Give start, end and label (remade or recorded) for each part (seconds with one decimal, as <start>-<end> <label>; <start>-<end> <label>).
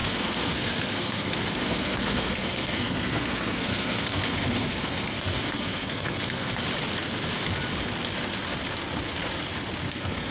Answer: 0.0-6.7 remade; 6.7-9.9 recorded; 9.9-10.3 remade